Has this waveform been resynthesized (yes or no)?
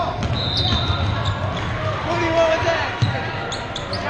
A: no